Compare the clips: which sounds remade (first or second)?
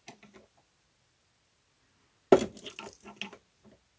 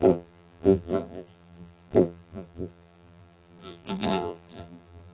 second